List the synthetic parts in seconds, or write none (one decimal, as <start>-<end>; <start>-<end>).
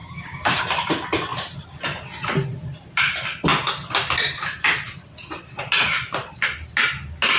0.0-0.6